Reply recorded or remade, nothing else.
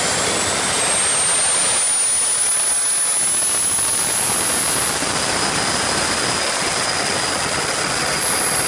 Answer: recorded